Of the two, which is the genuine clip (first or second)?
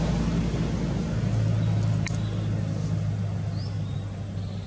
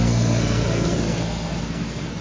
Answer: first